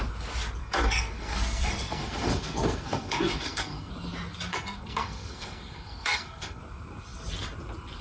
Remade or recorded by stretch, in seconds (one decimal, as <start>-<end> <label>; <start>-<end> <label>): 0.0-0.6 recorded; 0.6-3.9 remade; 3.9-4.5 recorded; 4.5-6.6 remade; 6.6-8.0 recorded